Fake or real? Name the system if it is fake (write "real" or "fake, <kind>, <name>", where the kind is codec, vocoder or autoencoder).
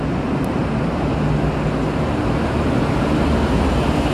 real